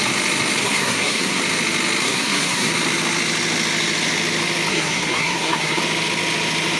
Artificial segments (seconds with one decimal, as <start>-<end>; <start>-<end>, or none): 0.6-1.4; 2.0-2.7; 4.7-5.8